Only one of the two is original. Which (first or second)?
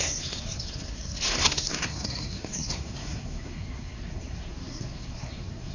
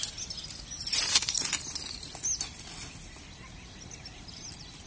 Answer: second